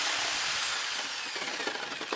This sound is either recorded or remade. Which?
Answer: recorded